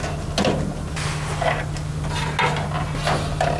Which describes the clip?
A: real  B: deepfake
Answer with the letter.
A